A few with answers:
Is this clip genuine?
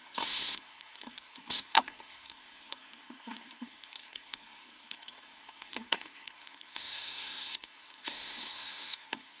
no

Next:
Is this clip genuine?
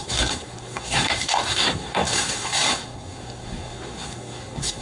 no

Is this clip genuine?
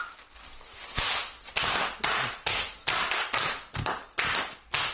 yes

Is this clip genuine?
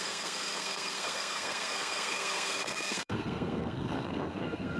no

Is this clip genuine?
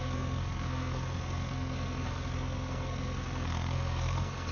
no